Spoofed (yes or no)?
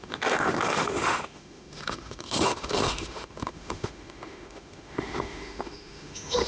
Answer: yes